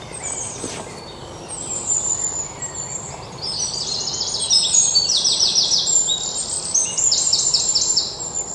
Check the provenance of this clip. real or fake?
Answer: fake